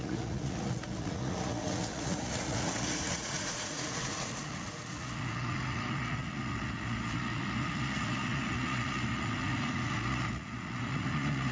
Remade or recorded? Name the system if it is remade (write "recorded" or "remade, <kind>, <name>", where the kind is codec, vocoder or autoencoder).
remade, vocoder, Vocos